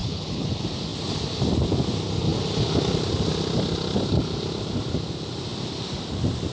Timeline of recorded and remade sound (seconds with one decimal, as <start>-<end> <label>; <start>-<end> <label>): 0.0-0.5 remade; 0.5-6.5 recorded